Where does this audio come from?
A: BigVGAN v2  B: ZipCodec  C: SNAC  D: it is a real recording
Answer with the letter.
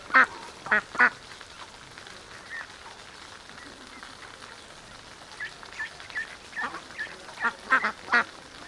D